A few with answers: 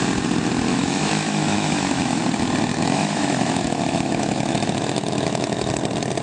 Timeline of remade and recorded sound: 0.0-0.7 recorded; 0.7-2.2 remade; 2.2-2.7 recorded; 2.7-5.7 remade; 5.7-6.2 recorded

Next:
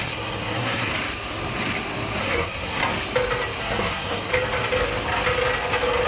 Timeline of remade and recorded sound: 0.0-0.9 remade; 0.9-2.2 recorded; 2.2-2.8 remade; 2.8-3.6 recorded; 3.6-4.3 remade; 4.3-6.1 recorded

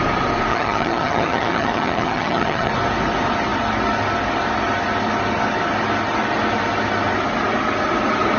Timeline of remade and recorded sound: 0.0-0.5 recorded; 0.5-2.7 remade; 2.7-8.4 recorded

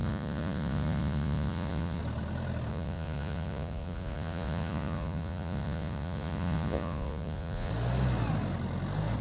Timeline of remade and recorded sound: 0.0-2.0 remade; 2.0-2.7 recorded; 2.7-7.7 remade; 7.7-9.2 recorded

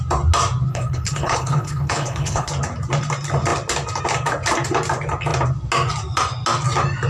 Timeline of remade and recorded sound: 0.0-0.7 recorded; 0.7-2.5 remade; 2.5-7.1 recorded

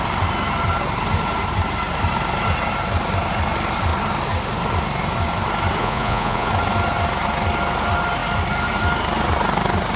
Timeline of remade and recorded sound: 0.0-5.8 recorded; 5.8-6.5 remade; 6.5-10.0 recorded

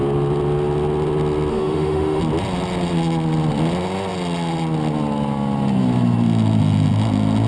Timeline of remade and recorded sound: 0.0-1.5 recorded; 1.5-2.2 remade; 2.2-7.5 recorded

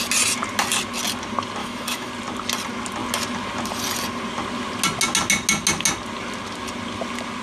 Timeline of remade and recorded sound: 0.0-1.6 recorded; 1.6-2.1 remade; 2.1-7.4 recorded